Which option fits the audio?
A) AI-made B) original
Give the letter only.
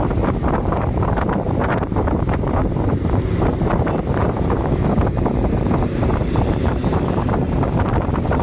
A